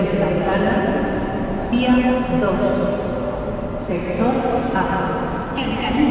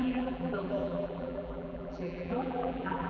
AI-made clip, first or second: second